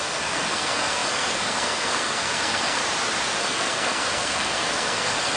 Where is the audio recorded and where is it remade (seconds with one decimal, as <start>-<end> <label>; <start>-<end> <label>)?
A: 0.0-2.8 remade; 2.8-3.4 recorded; 3.4-5.4 remade